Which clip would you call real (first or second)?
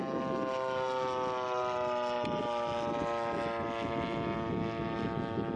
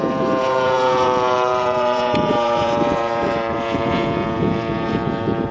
first